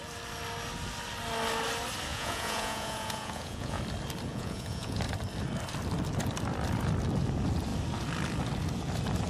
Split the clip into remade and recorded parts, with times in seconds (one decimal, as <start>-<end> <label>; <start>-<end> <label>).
0.0-2.1 recorded; 2.1-3.8 remade; 3.8-4.3 recorded; 4.3-5.0 remade; 5.0-9.3 recorded